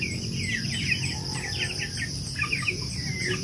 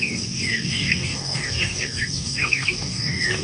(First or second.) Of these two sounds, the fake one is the second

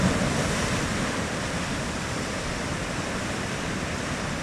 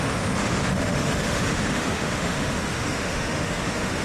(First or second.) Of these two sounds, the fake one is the second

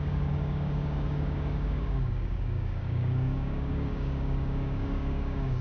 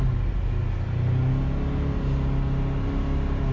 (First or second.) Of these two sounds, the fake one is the first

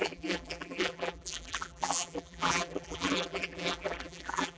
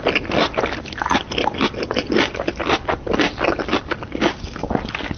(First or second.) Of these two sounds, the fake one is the first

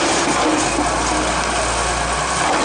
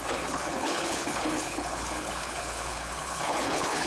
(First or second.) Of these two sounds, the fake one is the second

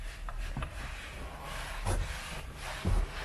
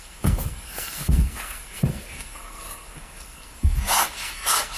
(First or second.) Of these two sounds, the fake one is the second